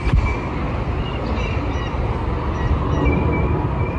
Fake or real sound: real